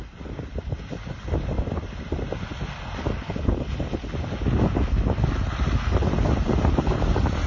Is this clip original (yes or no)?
yes